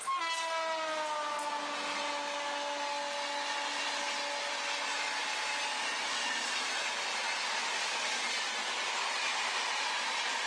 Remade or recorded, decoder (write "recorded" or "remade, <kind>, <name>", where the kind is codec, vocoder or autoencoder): recorded